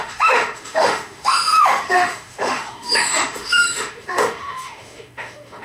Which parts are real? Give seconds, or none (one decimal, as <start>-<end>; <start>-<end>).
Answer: none